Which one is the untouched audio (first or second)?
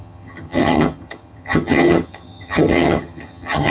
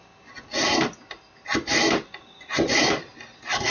second